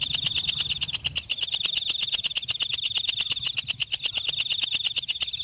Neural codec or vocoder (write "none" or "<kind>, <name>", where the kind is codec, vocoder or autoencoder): none